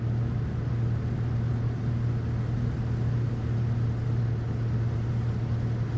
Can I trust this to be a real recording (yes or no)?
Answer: yes